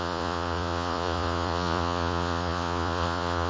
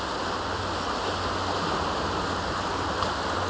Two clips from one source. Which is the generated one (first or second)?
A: first